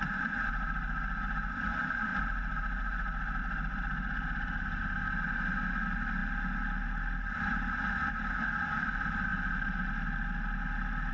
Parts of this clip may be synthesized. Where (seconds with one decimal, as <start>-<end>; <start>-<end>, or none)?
none